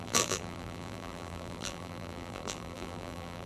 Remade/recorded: remade